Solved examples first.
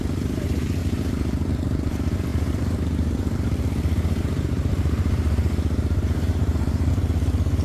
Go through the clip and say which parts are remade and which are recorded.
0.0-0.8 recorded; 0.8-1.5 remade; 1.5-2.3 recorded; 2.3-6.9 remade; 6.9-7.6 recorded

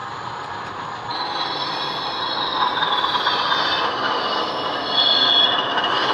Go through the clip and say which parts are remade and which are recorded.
0.0-0.7 remade; 0.7-6.1 recorded

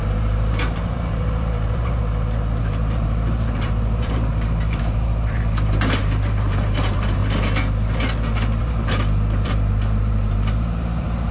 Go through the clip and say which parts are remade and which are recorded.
0.0-2.0 remade; 2.0-2.6 recorded; 2.6-7.2 remade; 7.2-8.6 recorded; 8.6-11.3 remade